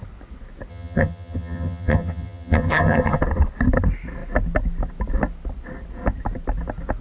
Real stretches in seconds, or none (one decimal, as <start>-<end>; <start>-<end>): 0.0-0.7; 3.2-7.0